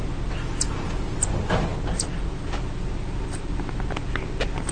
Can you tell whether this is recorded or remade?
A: recorded